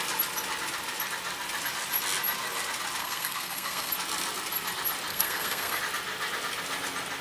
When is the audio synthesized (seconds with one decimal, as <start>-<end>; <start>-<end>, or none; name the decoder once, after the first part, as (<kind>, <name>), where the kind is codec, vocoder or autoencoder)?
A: 3.0-3.9 (codec, SNAC); 5.1-5.8